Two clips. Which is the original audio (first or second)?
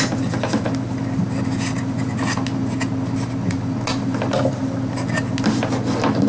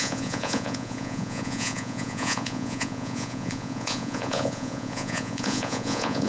first